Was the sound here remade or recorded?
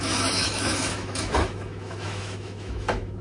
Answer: remade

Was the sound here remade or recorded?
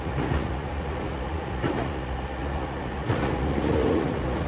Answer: remade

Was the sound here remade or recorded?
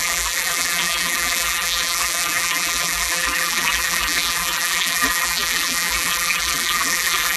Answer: remade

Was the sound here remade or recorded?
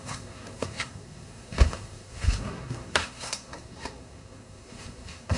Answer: remade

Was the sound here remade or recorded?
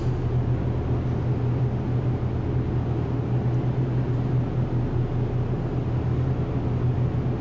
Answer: recorded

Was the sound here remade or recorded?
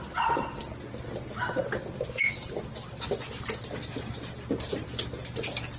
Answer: recorded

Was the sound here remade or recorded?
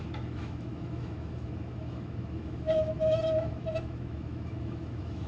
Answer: remade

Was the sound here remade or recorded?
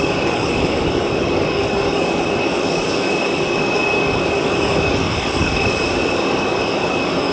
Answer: remade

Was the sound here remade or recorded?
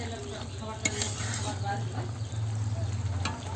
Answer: recorded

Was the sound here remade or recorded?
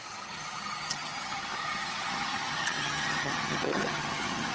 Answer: remade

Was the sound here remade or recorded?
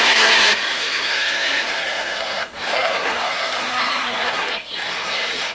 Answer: remade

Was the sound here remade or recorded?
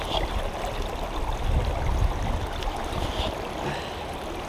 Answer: recorded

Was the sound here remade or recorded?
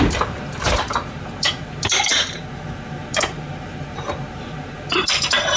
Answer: remade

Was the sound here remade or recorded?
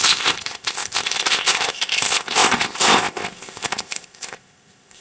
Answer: remade